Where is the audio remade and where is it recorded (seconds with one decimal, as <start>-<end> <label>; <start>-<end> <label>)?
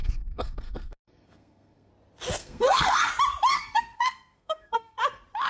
0.0-1.9 remade; 1.9-2.4 recorded; 2.4-3.1 remade; 3.1-3.5 recorded; 3.5-5.0 remade; 5.0-5.5 recorded